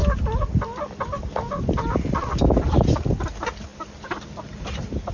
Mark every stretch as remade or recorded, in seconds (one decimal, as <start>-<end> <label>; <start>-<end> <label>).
0.0-5.1 recorded